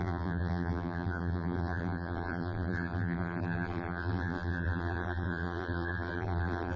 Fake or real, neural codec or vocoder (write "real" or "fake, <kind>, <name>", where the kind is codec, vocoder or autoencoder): fake, vocoder, BigVGAN v2